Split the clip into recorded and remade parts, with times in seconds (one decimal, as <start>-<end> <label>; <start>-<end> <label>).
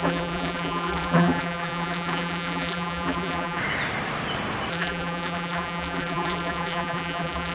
0.0-3.6 remade; 3.6-4.7 recorded; 4.7-7.5 remade